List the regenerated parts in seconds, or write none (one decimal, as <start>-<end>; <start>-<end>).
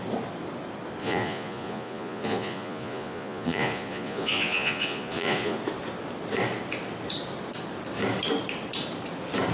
1.0-5.6